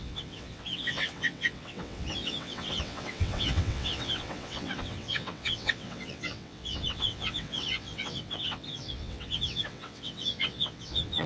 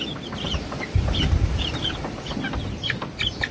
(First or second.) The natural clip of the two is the second